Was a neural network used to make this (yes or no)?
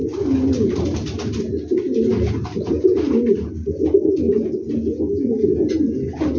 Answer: no